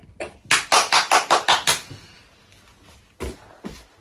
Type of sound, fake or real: real